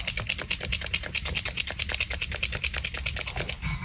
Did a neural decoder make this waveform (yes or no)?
no